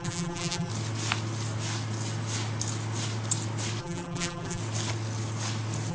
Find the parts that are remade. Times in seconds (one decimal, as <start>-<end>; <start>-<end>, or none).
0.0-0.7; 3.8-4.6